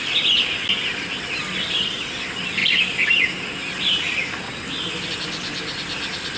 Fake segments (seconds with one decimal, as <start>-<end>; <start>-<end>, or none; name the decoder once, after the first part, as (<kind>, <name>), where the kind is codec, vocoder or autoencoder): none